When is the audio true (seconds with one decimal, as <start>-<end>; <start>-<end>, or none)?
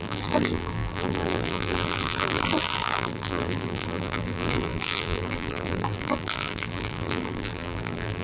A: none